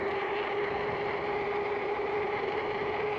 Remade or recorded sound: remade